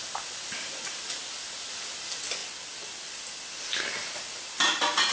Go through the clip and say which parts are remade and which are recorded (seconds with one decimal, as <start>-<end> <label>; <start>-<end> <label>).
0.0-5.1 recorded

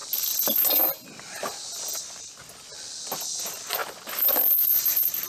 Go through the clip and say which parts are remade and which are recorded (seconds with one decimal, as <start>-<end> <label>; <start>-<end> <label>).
0.0-5.3 recorded

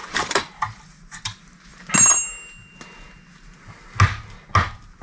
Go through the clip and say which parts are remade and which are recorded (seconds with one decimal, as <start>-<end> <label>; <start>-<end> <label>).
0.0-0.6 remade; 0.6-5.0 recorded

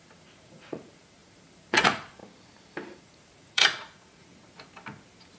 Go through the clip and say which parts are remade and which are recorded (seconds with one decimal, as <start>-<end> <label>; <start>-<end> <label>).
0.0-2.2 remade; 2.2-3.0 recorded; 3.0-4.3 remade; 4.3-5.4 recorded

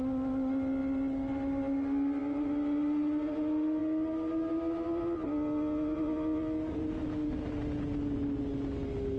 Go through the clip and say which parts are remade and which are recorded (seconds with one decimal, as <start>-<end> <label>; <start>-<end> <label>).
0.0-9.2 recorded